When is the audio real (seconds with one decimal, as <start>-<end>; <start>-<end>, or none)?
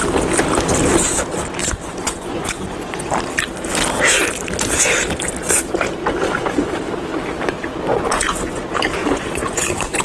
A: 0.0-1.6; 3.1-7.9; 8.6-9.0